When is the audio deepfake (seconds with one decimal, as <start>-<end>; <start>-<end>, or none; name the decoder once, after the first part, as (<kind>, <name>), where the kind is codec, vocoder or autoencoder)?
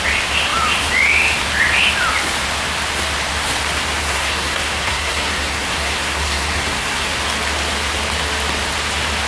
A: 4.0-7.2 (codec, SNAC)